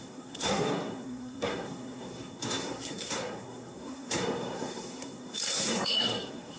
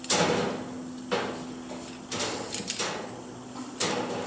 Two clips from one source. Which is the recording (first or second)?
second